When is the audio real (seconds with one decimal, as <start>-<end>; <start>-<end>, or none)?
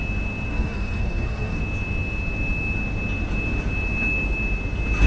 0.0-0.5; 1.6-5.1